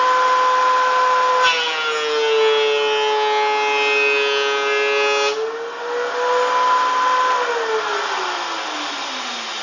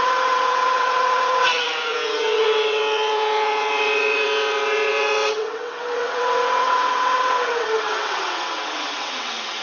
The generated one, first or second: second